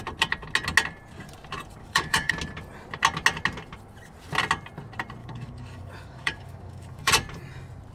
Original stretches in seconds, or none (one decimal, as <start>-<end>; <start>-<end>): 0.0-1.8; 2.3-5.2; 7.1-7.9